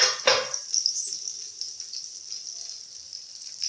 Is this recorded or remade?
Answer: recorded